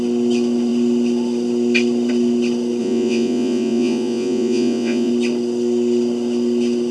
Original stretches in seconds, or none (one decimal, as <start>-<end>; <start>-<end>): 0.0-2.8; 5.1-6.9